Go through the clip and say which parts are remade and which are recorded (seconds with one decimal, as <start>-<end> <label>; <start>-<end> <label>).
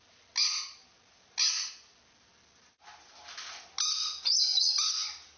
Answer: 0.0-5.4 recorded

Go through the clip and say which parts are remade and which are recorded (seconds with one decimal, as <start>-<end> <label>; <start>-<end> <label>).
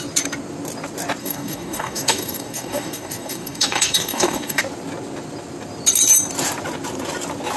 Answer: 0.0-1.2 recorded; 1.2-4.6 remade; 4.6-7.6 recorded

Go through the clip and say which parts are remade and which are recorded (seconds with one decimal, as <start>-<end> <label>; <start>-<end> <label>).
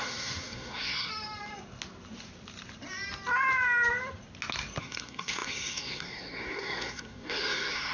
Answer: 0.0-1.1 remade; 1.1-4.8 recorded; 4.8-7.9 remade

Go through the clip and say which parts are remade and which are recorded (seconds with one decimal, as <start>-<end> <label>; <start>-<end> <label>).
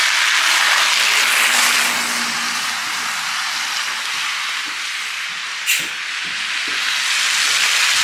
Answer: 0.0-8.0 recorded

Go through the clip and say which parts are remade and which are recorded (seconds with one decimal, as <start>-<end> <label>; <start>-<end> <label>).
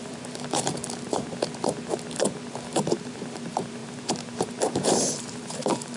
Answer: 0.0-0.8 remade; 0.8-3.1 recorded; 3.1-6.0 remade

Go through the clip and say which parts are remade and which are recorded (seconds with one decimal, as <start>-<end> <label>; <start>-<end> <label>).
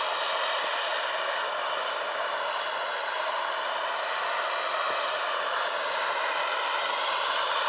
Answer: 0.0-7.7 recorded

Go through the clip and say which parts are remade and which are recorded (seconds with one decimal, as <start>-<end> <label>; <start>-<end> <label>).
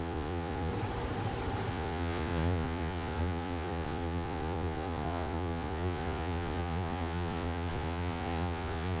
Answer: 0.0-0.7 remade; 0.7-1.7 recorded; 1.7-9.0 remade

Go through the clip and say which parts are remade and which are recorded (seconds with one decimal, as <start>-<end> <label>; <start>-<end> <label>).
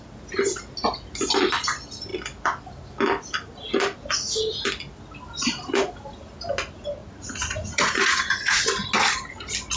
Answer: 0.0-7.0 recorded; 7.0-8.6 remade; 8.6-9.8 recorded